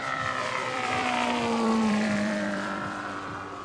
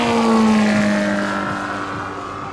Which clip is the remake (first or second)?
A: first